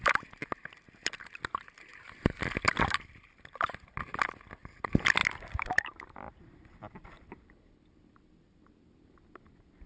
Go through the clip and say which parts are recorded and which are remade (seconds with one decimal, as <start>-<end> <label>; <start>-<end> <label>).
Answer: 0.0-9.9 recorded